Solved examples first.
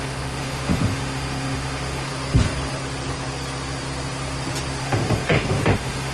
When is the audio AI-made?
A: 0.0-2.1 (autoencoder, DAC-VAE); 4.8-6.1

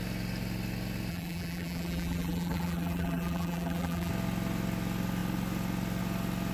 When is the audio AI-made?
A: 1.1-4.1 (vocoder, BigVGAN v2)

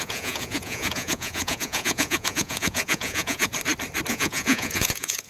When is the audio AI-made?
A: 0.0-3.5 (vocoder, Vocos); 4.1-5.3

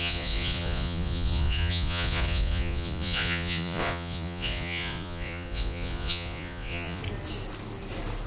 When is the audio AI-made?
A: 0.0-7.0 (vocoder, Vocos)